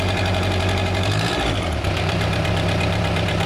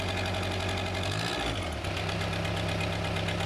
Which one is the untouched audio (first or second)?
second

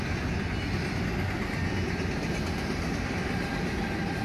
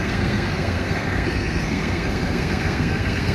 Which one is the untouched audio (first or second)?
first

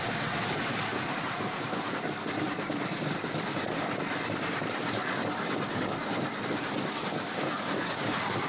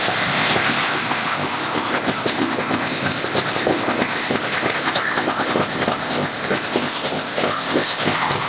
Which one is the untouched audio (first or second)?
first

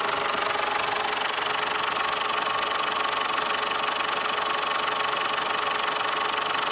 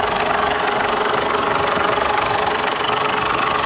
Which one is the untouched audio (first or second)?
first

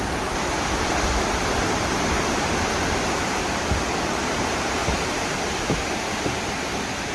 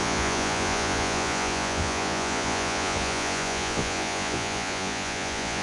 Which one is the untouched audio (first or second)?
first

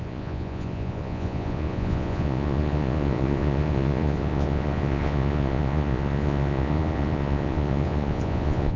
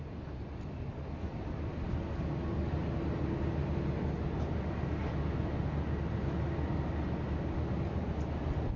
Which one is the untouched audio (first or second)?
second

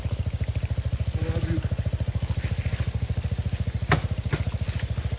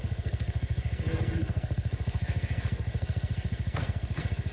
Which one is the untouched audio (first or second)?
first